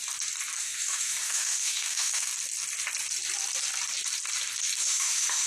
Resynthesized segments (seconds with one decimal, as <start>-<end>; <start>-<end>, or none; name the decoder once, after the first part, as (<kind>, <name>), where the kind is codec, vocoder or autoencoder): 0.6-2.3 (autoencoder, DAC-VAE); 4.8-5.5